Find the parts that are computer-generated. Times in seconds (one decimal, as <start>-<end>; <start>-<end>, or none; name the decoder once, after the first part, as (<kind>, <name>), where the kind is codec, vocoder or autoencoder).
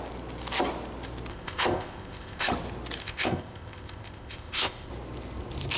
1.3-2.5 (codec, ZipCodec); 3.0-4.9